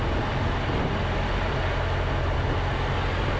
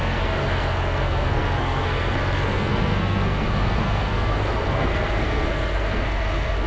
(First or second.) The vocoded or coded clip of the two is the second